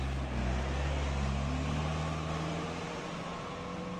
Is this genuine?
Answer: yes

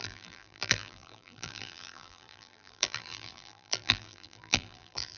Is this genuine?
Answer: no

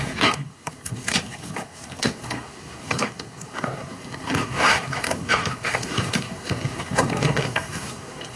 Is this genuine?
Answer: no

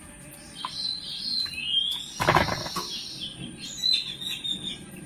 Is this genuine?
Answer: yes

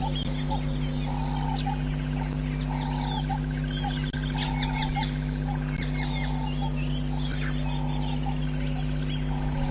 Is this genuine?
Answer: yes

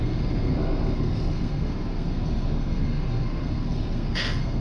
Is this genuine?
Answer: no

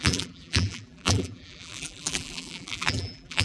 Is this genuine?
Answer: no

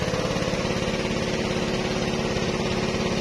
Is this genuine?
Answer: yes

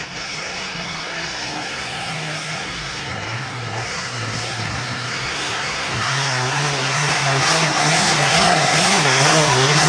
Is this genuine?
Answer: no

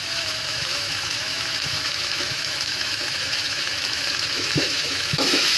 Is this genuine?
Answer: no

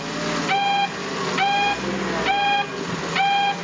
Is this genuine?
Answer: yes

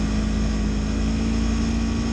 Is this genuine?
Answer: yes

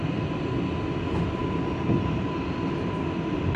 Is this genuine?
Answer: yes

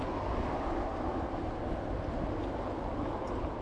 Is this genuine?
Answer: yes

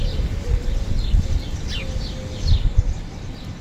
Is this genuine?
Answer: yes